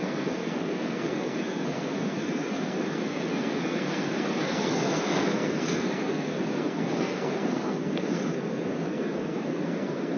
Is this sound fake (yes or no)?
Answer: yes